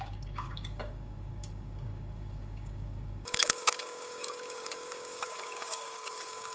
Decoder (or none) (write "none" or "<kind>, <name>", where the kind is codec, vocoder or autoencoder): codec, DAC